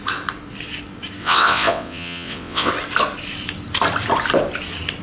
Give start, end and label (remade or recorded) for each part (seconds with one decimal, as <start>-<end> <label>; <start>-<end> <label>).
0.0-1.2 recorded; 1.2-2.7 remade; 2.7-5.0 recorded